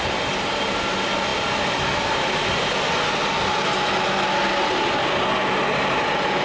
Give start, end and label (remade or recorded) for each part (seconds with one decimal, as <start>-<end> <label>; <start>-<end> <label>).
0.0-6.4 recorded